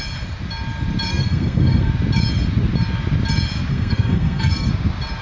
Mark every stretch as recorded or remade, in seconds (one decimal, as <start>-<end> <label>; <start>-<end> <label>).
0.0-1.1 recorded; 1.1-1.9 remade; 1.9-3.7 recorded; 3.7-4.7 remade; 4.7-5.2 recorded